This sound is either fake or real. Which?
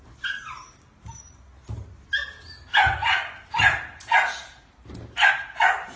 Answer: real